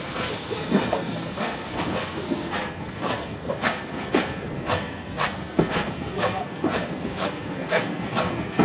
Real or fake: fake